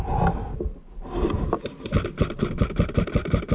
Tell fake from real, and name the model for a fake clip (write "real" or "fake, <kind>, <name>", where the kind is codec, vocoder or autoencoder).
real